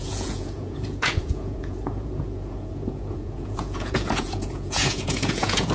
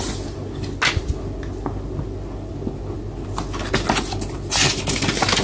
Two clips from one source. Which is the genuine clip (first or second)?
second